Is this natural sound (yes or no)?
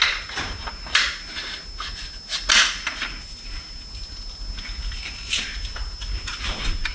yes